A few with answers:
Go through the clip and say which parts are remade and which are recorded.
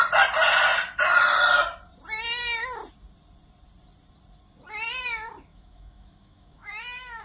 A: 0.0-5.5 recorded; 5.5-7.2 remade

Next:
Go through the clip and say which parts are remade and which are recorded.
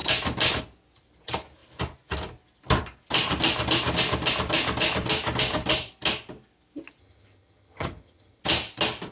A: 0.0-7.0 recorded; 7.0-8.4 remade; 8.4-9.1 recorded